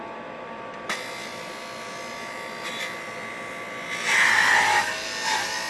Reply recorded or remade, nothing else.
recorded